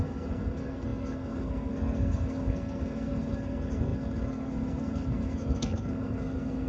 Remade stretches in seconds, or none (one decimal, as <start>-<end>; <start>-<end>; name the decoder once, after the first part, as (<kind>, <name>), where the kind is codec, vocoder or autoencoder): 0.0-6.7 (codec, SNAC)

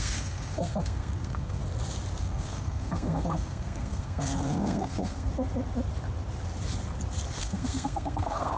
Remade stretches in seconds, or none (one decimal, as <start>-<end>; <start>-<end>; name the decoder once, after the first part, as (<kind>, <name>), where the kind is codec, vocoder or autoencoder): 0.0-1.6 (codec, SNAC); 2.2-5.3; 7.4-8.6

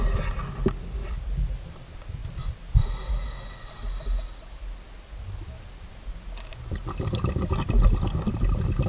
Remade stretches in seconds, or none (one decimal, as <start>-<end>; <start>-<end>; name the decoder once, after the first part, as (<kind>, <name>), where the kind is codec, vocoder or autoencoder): none

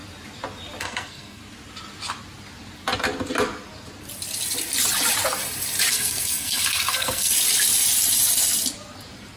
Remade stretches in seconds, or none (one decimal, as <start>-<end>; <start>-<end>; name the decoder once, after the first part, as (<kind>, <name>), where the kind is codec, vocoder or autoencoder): 0.8-1.4 (codec, SNAC); 5.9-7.3

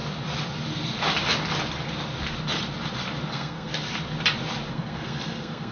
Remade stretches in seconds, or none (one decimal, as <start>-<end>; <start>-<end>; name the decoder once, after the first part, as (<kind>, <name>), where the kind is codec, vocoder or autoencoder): 3.3-3.7 (codec, SNAC); 4.7-5.7

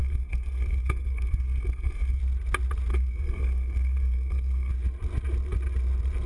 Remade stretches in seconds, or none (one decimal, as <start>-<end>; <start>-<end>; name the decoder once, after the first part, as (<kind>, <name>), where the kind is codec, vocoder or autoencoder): 0.0-2.2 (codec, SNAC); 2.9-4.7

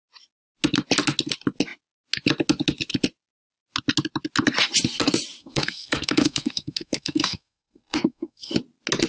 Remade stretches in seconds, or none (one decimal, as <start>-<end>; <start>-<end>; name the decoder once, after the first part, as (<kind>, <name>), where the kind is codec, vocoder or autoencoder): 5.4-8.5 (codec, SNAC)